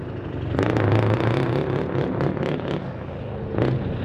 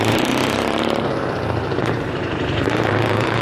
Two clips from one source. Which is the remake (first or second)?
second